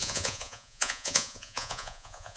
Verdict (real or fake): fake